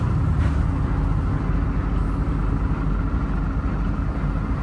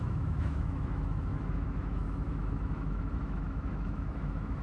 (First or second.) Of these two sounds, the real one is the first